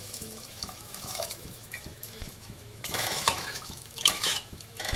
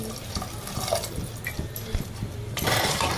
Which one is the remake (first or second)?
first